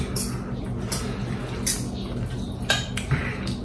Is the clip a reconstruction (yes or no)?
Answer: no